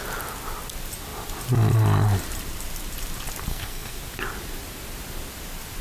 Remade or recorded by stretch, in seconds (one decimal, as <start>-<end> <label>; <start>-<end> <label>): 0.0-3.5 recorded; 3.5-4.0 remade; 4.0-5.8 recorded